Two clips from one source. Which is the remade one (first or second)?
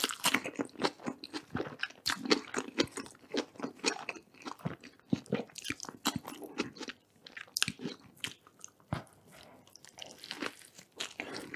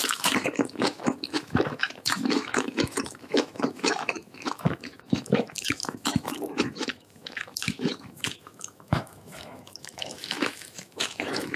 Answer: second